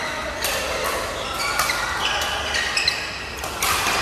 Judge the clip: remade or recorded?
recorded